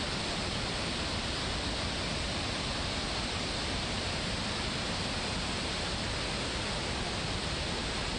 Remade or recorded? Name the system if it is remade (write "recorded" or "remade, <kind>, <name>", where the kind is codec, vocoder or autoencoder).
recorded